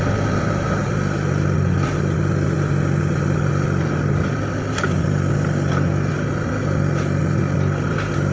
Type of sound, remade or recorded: recorded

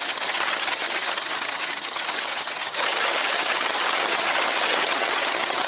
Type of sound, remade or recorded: remade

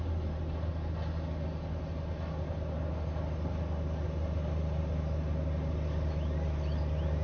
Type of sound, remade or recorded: recorded